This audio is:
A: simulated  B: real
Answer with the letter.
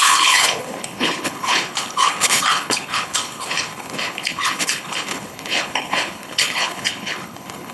A